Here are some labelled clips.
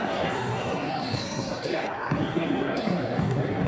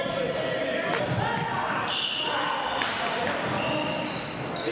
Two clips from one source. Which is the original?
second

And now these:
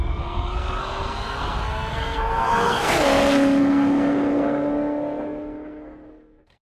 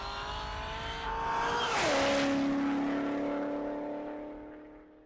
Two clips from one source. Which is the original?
second